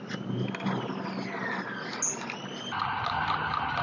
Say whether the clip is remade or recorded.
recorded